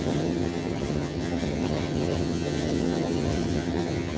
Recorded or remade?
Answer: remade